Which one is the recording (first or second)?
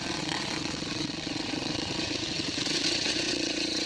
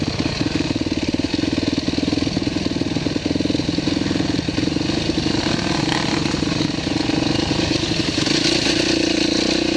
second